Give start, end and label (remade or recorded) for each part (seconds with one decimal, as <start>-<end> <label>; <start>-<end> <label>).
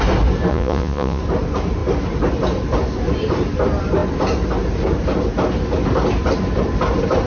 0.0-0.5 recorded; 0.5-1.2 remade; 1.2-7.3 recorded